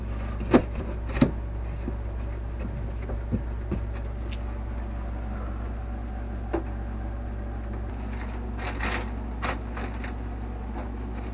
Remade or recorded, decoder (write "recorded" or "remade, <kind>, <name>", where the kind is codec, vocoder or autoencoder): recorded